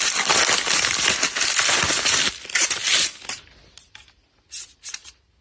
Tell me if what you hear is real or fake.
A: real